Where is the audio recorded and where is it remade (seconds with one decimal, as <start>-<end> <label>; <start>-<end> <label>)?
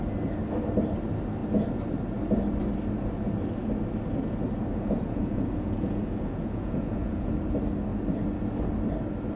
0.0-4.7 recorded; 4.7-7.3 remade; 7.3-9.4 recorded